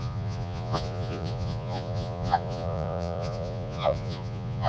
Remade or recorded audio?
remade